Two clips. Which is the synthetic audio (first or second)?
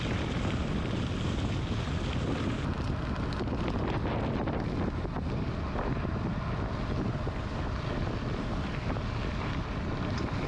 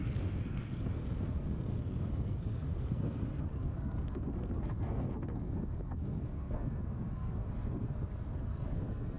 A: second